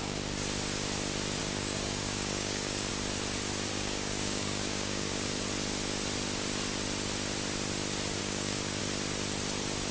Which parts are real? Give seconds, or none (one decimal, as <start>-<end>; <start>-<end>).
0.0-1.4; 2.9-3.7; 5.1-8.2; 8.8-9.9